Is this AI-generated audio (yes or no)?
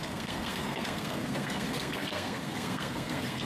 yes